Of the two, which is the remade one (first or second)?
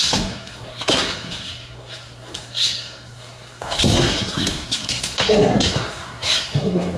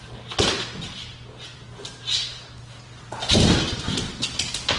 first